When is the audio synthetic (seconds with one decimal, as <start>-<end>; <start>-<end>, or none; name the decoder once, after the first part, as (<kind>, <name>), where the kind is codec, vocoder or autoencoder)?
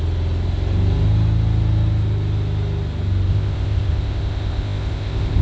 3.3-5.4 (codec, ZipCodec)